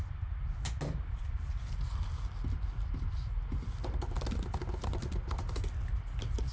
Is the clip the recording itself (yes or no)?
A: yes